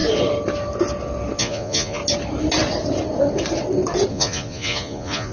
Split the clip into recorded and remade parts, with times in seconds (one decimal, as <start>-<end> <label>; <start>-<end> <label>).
0.0-1.4 recorded; 1.4-2.0 remade; 2.0-4.1 recorded; 4.1-5.3 remade